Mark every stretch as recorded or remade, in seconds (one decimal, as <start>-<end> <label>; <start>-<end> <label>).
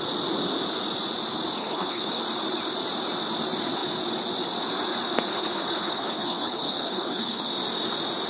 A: 0.0-1.6 recorded; 1.6-2.2 remade; 2.2-5.3 recorded; 5.3-7.5 remade; 7.5-8.3 recorded